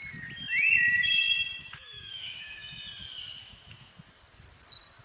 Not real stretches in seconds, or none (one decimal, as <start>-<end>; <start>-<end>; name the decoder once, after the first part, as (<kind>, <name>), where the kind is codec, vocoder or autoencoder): 1.6-2.8 (autoencoder, DAC-VAE); 3.4-3.9